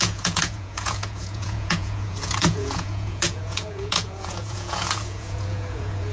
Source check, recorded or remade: remade